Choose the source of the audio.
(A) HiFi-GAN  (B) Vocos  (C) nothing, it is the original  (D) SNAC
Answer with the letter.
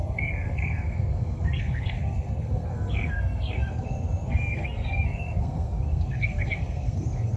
D